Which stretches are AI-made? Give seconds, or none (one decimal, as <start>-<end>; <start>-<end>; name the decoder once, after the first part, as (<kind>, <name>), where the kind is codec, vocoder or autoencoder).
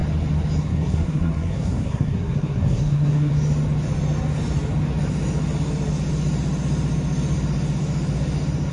0.6-3.3 (codec, SNAC)